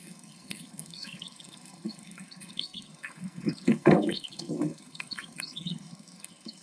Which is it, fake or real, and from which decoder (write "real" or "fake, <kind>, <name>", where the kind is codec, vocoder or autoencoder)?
fake, codec, SNAC